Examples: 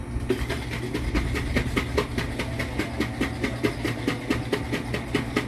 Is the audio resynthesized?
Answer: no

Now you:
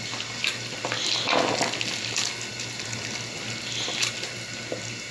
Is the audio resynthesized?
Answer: no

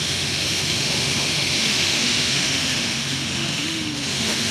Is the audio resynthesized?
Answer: yes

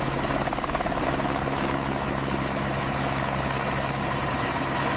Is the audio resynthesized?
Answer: no